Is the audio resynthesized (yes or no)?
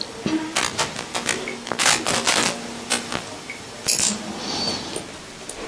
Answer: no